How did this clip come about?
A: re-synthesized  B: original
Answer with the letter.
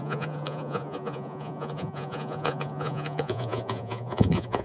A